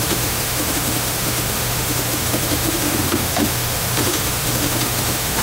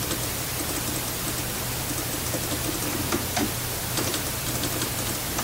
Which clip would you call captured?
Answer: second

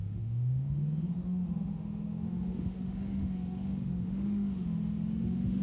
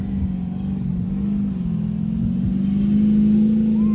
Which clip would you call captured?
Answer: second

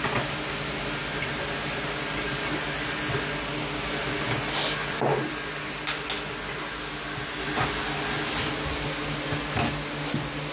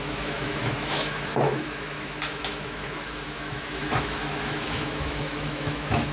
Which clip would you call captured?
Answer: first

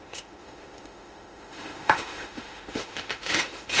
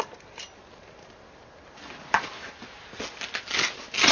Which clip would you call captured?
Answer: second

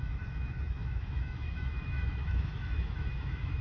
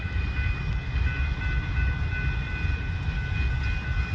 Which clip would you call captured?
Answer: second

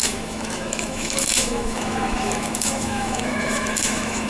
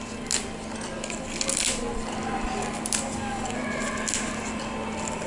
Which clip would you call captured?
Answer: second